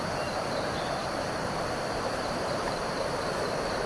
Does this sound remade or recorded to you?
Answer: remade